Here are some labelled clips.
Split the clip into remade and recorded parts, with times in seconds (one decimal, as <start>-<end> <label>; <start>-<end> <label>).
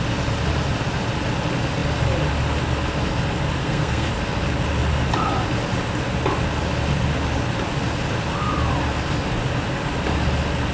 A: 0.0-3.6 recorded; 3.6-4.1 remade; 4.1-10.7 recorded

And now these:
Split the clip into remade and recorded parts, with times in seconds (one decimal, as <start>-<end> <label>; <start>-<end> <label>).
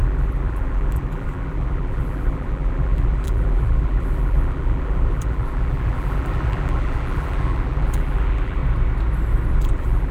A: 0.0-8.6 remade; 8.6-9.5 recorded; 9.5-10.1 remade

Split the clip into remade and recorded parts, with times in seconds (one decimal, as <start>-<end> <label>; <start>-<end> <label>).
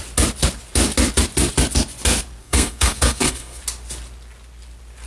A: 0.0-2.4 recorded; 2.4-3.6 remade; 3.6-5.1 recorded